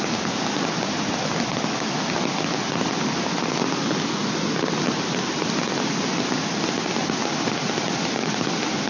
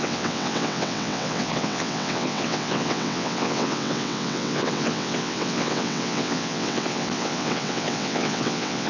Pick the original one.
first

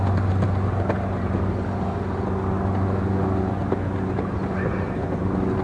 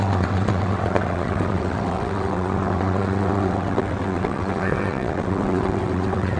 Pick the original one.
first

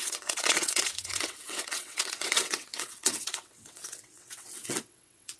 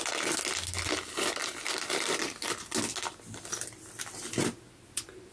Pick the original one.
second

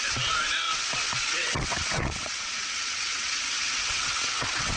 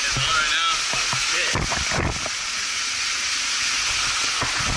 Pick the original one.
second